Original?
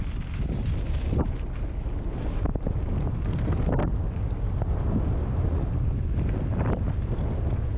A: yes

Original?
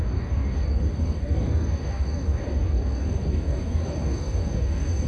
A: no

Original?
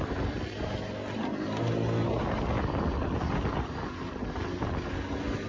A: yes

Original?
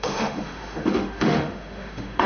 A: no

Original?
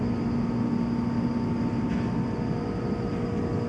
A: yes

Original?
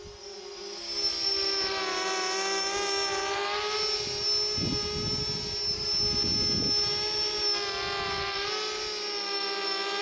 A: yes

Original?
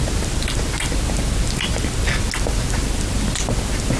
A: yes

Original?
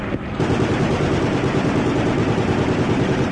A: yes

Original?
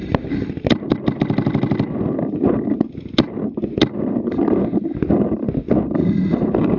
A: yes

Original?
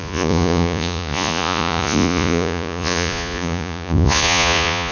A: no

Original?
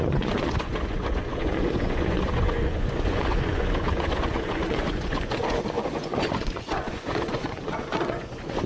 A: no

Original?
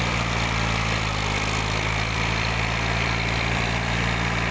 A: no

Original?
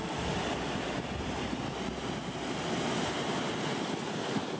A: yes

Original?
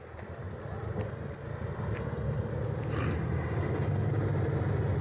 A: yes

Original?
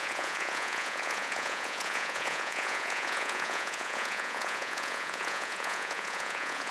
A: no